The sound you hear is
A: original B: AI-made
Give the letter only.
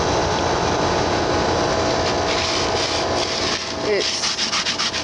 A